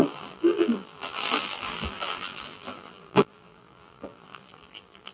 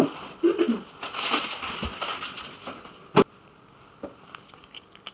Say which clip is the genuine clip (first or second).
second